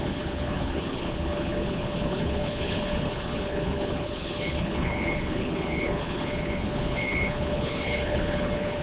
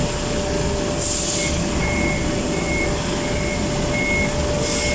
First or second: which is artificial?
first